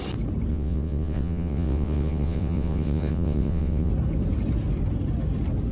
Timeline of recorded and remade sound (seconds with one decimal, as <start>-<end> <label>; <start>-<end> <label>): 0.0-0.5 recorded; 0.5-3.9 remade; 3.9-5.7 recorded